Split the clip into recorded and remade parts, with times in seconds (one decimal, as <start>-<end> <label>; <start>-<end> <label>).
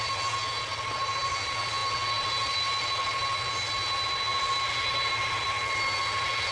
0.0-6.5 recorded